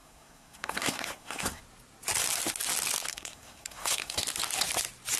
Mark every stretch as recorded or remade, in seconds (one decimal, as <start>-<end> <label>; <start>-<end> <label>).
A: 0.0-1.6 remade; 1.6-3.1 recorded; 3.1-4.2 remade; 4.2-5.2 recorded